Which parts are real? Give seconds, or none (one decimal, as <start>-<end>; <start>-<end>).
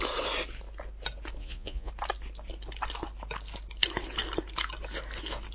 0.0-1.4; 1.9-5.5